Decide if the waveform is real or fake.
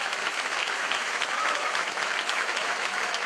fake